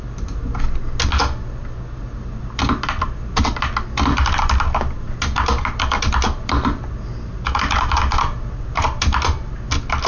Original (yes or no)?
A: yes